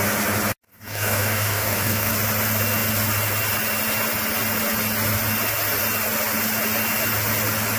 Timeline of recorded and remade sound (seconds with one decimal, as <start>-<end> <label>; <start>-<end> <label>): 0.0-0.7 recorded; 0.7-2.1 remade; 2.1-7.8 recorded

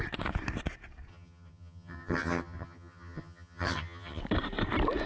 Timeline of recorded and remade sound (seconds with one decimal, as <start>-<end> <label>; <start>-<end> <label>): 0.0-1.1 recorded; 1.1-4.2 remade; 4.2-5.1 recorded

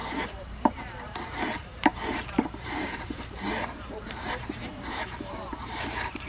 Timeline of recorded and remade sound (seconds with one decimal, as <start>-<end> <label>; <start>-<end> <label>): 0.0-6.3 remade

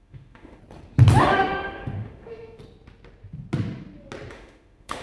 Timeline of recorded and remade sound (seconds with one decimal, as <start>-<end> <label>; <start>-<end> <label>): 0.0-0.6 remade; 0.6-1.2 recorded; 1.2-2.6 remade; 2.6-4.3 recorded; 4.3-5.0 remade

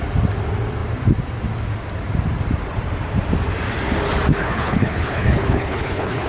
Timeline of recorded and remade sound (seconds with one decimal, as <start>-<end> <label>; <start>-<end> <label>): 0.0-4.4 recorded; 4.4-6.3 remade

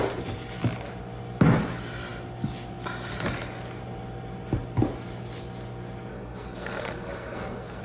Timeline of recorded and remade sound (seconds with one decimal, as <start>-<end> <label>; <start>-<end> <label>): 0.0-6.1 recorded; 6.1-7.8 remade